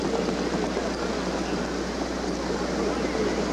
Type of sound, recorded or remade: recorded